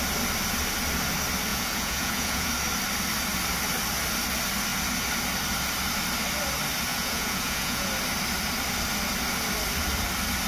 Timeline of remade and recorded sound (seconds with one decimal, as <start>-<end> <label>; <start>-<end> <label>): 0.0-1.5 recorded; 1.5-2.5 remade; 2.5-6.9 recorded; 6.9-7.9 remade; 7.9-10.5 recorded